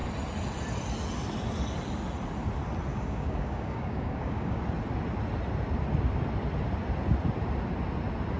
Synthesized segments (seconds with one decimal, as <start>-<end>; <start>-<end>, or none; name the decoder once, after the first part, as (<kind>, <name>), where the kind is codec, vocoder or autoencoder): 2.9-4.6 (codec, DAC)